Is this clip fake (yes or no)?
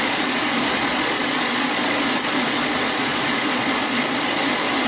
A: yes